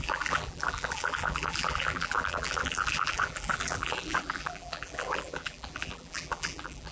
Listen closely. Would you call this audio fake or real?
fake